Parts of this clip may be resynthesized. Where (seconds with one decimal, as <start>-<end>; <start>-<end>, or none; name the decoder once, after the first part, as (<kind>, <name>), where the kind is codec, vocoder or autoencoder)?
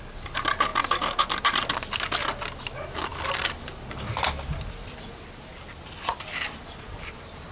none